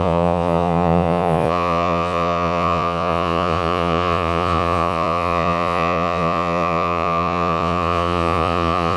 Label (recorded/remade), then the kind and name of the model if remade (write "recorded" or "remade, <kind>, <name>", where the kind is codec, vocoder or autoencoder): remade, vocoder, Vocos